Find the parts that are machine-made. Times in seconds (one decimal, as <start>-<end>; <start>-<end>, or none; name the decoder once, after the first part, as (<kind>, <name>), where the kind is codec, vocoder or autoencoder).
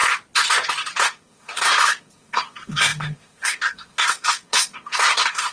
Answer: 1.0-5.5 (codec, SNAC)